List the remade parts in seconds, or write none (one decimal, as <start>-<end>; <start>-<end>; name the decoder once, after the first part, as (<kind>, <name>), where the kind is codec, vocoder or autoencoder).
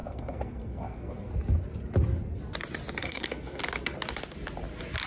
0.0-1.3 (codec, SNAC); 3.0-3.6